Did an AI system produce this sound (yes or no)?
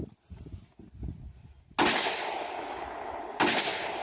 no